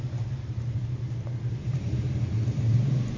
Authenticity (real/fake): fake